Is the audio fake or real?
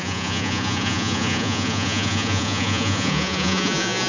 fake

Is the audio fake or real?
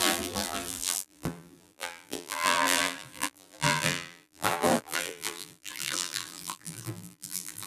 fake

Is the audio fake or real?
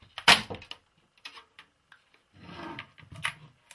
real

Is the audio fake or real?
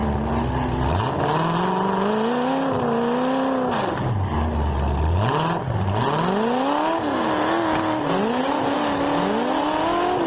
real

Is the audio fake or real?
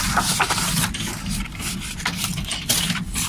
real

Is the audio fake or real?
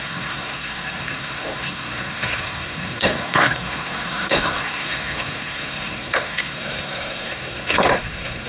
fake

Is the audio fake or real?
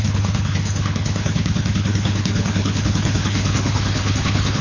fake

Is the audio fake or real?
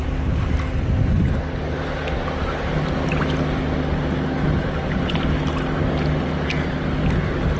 real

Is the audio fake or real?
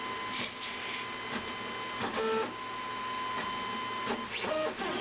real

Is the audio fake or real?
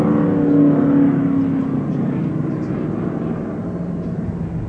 real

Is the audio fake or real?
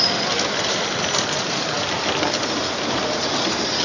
real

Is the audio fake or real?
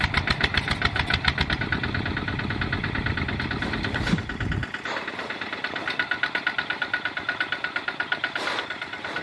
fake